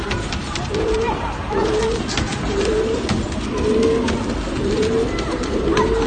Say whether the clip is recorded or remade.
recorded